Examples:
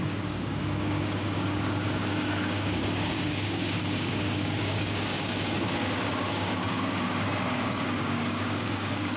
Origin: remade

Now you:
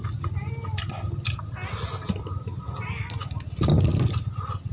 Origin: recorded